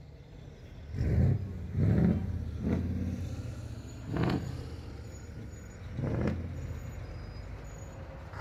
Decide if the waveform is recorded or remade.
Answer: recorded